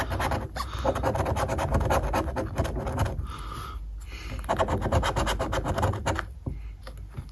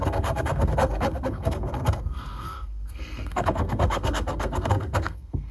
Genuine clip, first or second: first